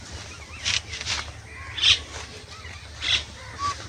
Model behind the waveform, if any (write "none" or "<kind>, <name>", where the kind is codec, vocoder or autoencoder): none